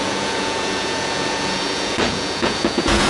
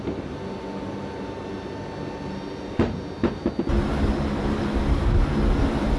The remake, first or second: first